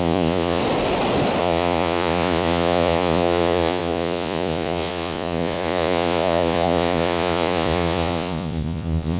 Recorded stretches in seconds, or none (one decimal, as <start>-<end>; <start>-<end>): 0.6-1.4